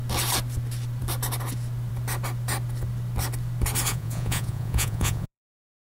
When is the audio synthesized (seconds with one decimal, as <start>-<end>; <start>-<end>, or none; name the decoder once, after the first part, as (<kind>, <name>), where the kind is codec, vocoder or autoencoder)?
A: 3.9-5.4 (vocoder, Vocos)